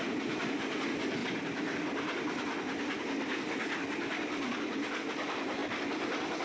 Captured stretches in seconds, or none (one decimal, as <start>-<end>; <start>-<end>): 0.0-6.4